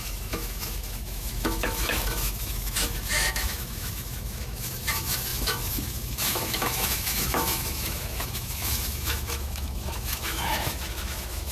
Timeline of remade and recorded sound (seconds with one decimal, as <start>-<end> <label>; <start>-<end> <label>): 0.0-11.5 remade